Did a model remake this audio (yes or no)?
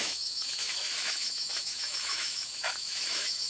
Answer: yes